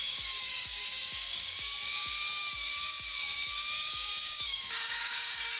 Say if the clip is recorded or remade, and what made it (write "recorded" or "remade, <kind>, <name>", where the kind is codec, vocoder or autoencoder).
remade, codec, DAC